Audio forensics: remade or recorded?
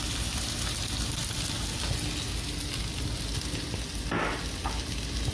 recorded